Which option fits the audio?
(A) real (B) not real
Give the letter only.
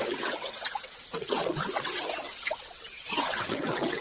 B